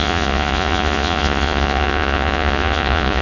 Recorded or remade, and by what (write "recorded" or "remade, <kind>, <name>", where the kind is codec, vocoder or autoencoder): remade, vocoder, Vocos